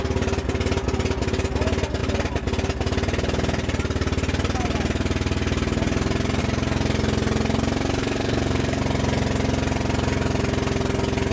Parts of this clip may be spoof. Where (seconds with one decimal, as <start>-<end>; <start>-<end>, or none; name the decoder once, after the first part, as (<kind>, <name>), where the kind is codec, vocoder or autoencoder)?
8.0-8.8 (codec, DAC)